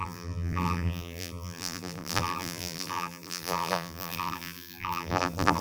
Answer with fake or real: fake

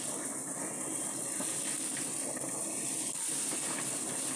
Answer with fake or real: real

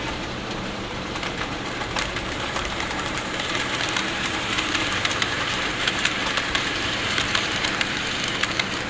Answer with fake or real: fake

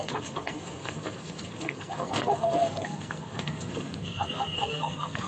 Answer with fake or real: fake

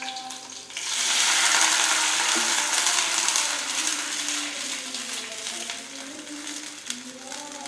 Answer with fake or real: real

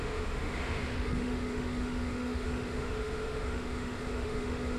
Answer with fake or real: fake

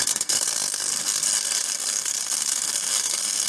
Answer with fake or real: fake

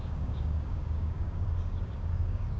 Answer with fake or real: fake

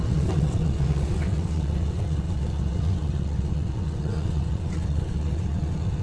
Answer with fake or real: fake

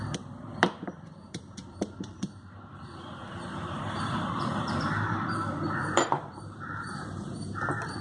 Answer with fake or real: fake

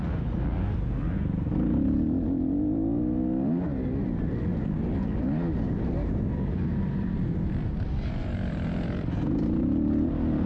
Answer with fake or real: real